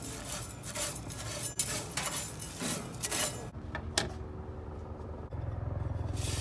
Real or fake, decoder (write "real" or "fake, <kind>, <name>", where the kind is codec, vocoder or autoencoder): real